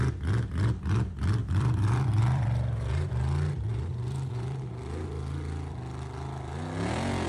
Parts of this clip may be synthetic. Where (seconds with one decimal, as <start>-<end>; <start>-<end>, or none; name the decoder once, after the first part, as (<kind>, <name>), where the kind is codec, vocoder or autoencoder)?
1.4-3.1 (vocoder, BigVGAN v2); 3.7-4.7